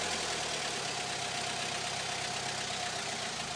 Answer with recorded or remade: recorded